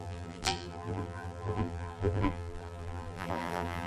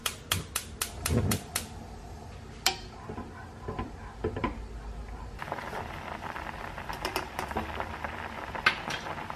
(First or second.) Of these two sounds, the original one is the second